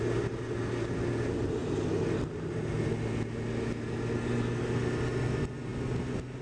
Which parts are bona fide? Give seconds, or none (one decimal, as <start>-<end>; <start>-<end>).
0.0-6.4